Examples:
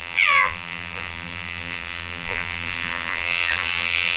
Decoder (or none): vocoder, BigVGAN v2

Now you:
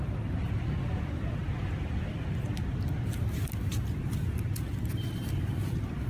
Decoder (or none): vocoder, BigVGAN v2